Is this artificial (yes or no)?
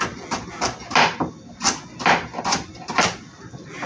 no